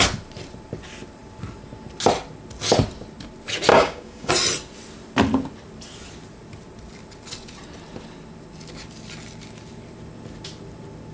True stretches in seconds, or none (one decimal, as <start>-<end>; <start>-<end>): 0.0-3.7; 4.3-11.1